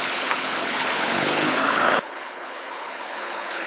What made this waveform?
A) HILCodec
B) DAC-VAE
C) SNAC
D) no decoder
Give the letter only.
A